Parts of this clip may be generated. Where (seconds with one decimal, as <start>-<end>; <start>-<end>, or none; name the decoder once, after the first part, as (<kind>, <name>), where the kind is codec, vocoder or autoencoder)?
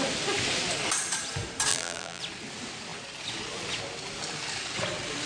1.7-2.2 (vocoder, BigVGAN v2)